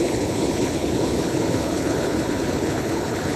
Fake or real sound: fake